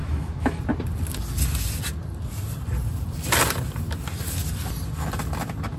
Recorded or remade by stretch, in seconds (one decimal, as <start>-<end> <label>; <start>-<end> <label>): 0.0-0.6 remade; 0.6-5.8 recorded